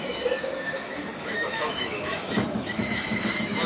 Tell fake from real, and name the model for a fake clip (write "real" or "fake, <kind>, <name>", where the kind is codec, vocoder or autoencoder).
fake, autoencoder, DAC-VAE